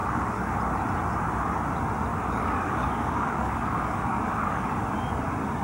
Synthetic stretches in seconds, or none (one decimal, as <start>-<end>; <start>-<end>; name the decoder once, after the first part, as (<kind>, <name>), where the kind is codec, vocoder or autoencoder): 0.0-0.6 (codec, DAC); 2.1-4.7